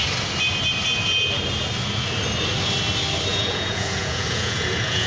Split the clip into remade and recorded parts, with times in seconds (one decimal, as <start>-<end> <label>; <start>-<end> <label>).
0.0-3.3 recorded; 3.3-5.1 remade